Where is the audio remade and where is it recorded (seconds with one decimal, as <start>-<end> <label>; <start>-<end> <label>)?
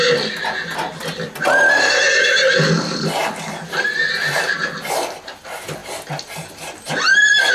0.0-7.5 recorded